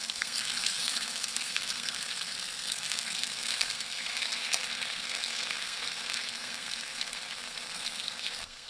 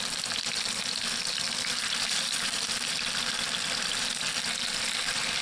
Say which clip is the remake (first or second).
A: first